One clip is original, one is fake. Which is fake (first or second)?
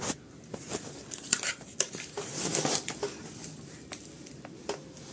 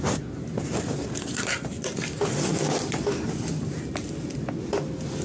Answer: first